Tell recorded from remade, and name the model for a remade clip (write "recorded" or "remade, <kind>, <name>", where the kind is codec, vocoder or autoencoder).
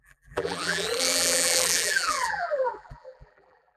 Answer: remade, vocoder, BigVGAN v2